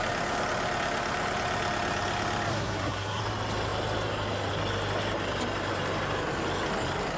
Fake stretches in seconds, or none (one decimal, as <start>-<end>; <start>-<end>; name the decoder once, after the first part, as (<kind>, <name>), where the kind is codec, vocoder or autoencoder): 2.5-3.2 (codec, SNAC)